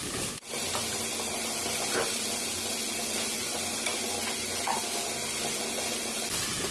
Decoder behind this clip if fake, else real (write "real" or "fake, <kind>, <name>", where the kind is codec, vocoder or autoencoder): real